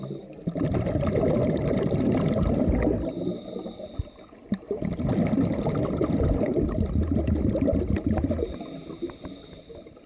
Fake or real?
real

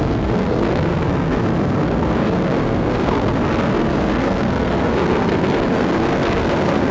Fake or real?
fake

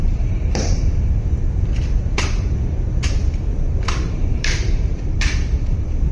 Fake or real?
fake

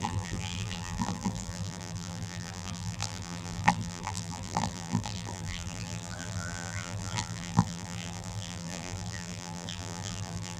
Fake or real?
fake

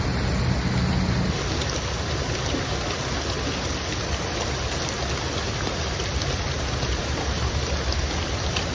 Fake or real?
real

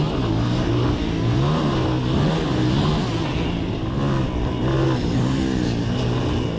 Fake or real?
real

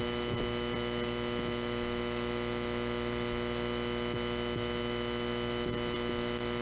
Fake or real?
real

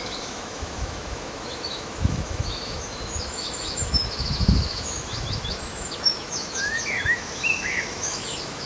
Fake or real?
fake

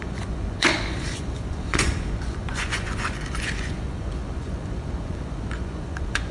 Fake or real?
fake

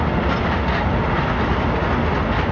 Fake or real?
real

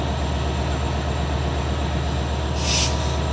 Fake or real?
real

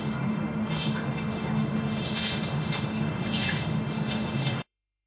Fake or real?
fake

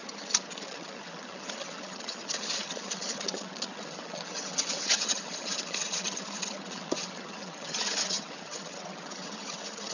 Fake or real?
fake